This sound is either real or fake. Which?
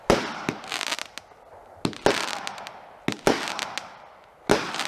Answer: real